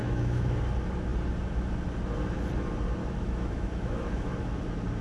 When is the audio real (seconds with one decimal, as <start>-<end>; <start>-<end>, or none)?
0.6-3.0; 4.6-5.0